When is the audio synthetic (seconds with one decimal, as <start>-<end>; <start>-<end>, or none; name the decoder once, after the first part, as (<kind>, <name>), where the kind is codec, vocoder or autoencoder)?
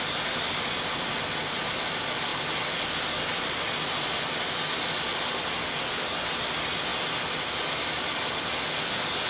none